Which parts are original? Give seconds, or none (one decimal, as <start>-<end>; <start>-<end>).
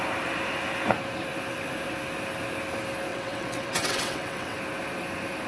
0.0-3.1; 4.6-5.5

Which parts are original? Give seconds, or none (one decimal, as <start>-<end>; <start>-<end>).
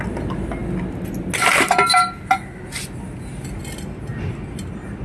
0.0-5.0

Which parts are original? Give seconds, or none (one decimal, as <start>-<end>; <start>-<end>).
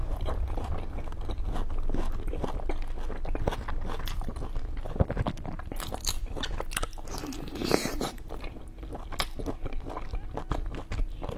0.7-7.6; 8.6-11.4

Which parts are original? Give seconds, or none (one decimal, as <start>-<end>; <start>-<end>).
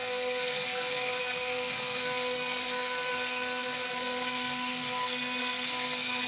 none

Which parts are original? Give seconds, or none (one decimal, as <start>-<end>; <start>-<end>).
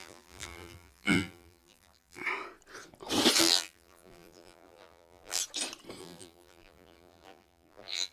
2.2-3.4; 5.4-6.0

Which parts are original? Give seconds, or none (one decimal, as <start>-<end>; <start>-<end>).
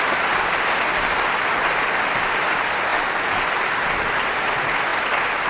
0.0-5.5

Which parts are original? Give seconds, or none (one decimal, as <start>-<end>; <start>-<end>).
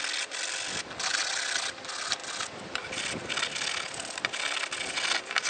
0.0-5.5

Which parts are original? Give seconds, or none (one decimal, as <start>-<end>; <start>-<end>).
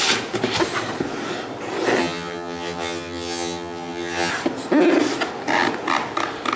0.0-2.0; 4.3-6.6